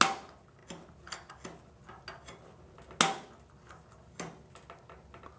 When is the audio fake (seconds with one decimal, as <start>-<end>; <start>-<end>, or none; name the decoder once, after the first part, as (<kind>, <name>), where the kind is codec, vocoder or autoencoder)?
none